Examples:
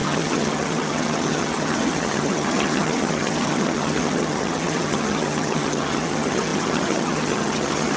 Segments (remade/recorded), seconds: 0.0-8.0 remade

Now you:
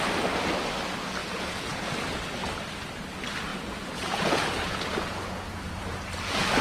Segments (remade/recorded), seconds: 0.0-1.2 recorded; 1.2-1.9 remade; 1.9-3.5 recorded; 3.5-5.7 remade; 5.7-6.6 recorded

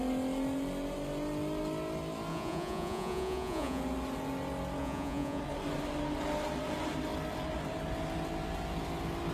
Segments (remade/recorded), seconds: 0.0-2.3 recorded; 2.3-3.8 remade; 3.8-4.8 recorded; 4.8-5.4 remade; 5.4-9.3 recorded

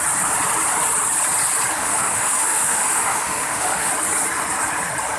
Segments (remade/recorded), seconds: 0.0-1.8 recorded; 1.8-3.9 remade; 3.9-5.2 recorded

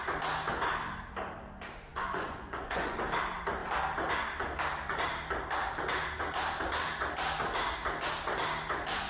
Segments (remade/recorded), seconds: 0.0-1.9 recorded; 1.9-3.0 remade; 3.0-9.1 recorded

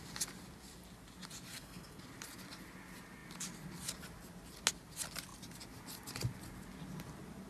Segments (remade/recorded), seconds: 0.0-1.5 recorded; 1.5-2.0 remade; 2.0-7.5 recorded

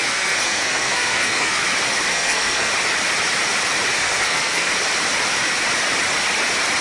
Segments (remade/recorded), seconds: 0.0-1.6 remade; 1.6-2.1 recorded; 2.1-2.7 remade; 2.7-4.0 recorded; 4.0-4.7 remade; 4.7-6.8 recorded

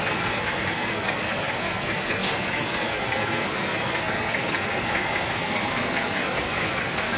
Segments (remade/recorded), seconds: 0.0-7.2 remade